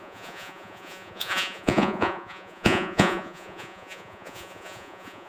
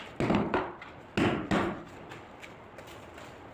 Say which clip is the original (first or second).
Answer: second